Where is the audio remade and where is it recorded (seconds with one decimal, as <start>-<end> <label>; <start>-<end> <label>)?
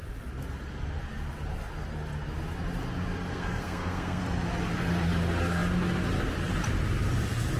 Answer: 0.0-3.3 recorded; 3.3-4.2 remade; 4.2-7.6 recorded